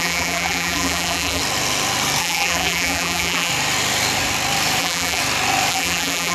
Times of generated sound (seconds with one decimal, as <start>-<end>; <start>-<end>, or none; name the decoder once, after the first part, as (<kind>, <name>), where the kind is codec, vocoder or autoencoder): 0.0-1.4 (vocoder, BigVGAN v2); 2.2-3.5; 4.8-5.2; 5.7-6.3